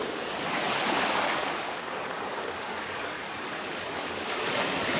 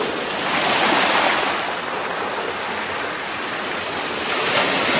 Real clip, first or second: second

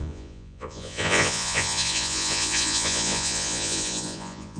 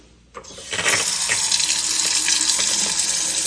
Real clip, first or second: second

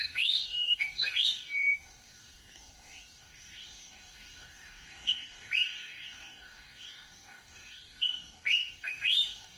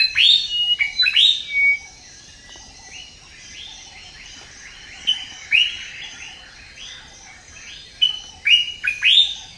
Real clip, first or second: second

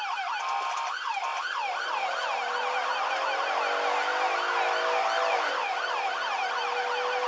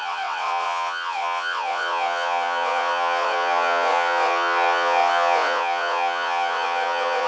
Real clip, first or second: first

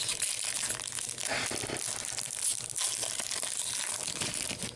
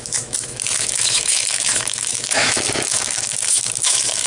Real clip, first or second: first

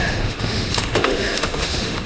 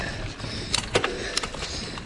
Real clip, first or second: second